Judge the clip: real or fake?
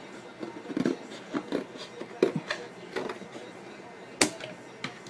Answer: real